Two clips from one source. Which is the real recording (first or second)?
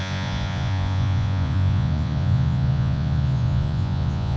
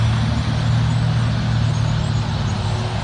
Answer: second